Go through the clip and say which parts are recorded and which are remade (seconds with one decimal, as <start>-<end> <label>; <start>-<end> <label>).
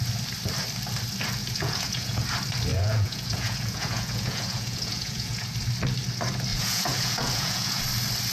0.0-1.4 recorded; 1.4-2.2 remade; 2.2-2.7 recorded; 2.7-5.5 remade; 5.5-6.5 recorded; 6.5-7.8 remade; 7.8-8.3 recorded